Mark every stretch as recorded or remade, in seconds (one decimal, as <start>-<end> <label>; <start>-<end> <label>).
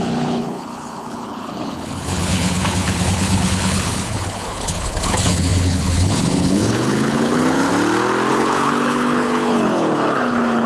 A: 0.0-7.7 remade; 7.7-8.3 recorded; 8.3-10.7 remade